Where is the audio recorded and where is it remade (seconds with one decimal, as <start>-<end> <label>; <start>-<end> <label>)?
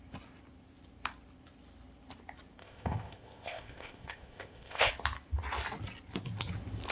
0.0-2.6 recorded; 2.6-4.9 remade; 4.9-6.9 recorded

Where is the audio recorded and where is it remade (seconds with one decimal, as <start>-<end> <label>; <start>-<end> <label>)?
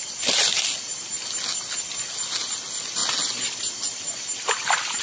0.0-5.0 recorded